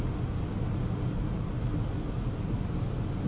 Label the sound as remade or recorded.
recorded